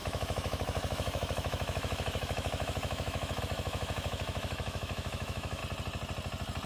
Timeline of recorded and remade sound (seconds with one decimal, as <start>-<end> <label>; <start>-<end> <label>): 0.0-5.6 remade; 5.6-6.7 recorded